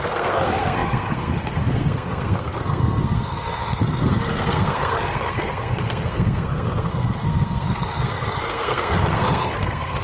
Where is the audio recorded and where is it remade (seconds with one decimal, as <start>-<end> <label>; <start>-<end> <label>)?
0.0-10.0 remade